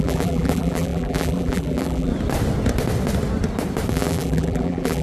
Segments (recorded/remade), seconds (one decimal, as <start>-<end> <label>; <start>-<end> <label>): 0.0-2.1 remade; 2.1-3.9 recorded; 3.9-5.0 remade